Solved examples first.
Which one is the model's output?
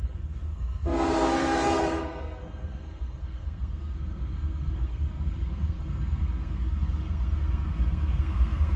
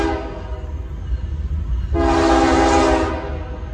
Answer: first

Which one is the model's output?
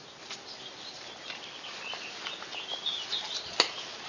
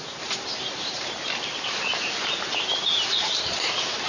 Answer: second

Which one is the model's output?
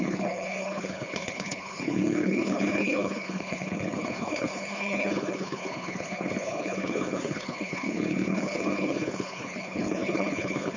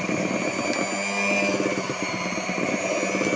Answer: first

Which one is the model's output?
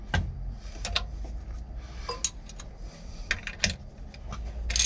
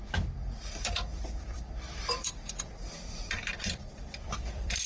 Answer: second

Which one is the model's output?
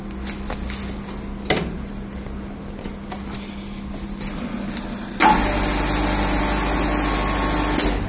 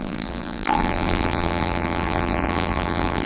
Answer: second